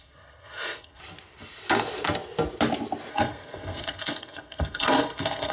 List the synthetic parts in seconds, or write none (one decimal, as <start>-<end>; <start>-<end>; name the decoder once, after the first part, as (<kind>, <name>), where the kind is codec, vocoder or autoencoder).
0.0-1.0 (codec, SNAC); 3.1-5.5